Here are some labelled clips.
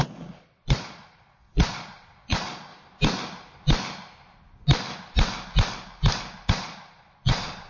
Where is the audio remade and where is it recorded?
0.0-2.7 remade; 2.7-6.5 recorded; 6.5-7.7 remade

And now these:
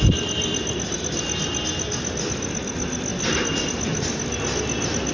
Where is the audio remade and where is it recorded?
0.0-5.1 recorded